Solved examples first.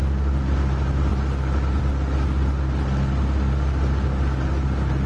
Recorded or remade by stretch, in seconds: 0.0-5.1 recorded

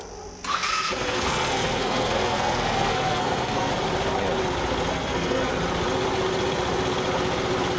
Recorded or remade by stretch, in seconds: 0.0-0.5 recorded; 0.5-3.7 remade; 3.7-4.9 recorded; 4.9-5.5 remade; 5.5-7.8 recorded